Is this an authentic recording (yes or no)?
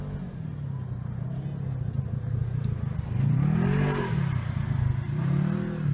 yes